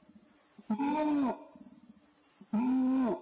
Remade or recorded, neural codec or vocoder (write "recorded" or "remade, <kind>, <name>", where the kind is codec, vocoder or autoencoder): recorded